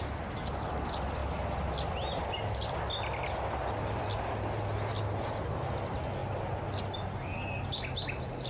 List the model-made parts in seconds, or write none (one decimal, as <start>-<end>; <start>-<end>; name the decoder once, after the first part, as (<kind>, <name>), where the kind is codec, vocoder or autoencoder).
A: none